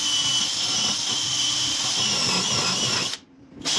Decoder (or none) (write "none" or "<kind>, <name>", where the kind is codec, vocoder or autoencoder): none